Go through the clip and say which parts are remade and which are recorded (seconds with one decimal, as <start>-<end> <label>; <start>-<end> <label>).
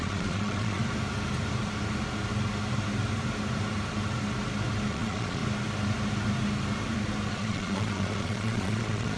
0.0-0.8 remade; 0.8-4.9 recorded; 4.9-5.4 remade; 5.4-7.3 recorded; 7.3-9.2 remade